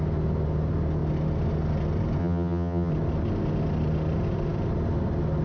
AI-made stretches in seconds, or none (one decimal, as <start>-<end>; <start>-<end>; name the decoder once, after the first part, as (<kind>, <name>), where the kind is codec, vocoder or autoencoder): 2.2-2.9 (vocoder, HiFi-GAN)